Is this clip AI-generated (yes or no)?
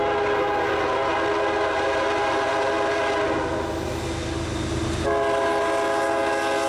no